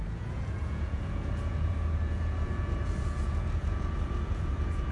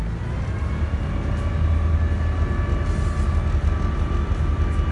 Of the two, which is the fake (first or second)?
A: first